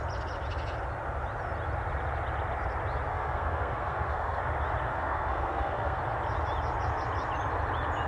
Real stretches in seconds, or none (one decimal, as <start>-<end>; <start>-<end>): 0.0-3.1; 4.4-4.9; 6.0-8.1